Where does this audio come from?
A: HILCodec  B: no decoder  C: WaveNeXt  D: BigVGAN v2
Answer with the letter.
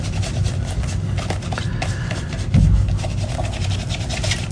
B